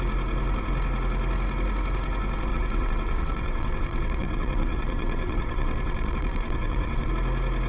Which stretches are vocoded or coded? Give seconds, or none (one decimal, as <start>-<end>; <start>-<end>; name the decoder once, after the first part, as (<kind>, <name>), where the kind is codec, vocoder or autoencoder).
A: 2.5-7.1 (vocoder, WaveNeXt)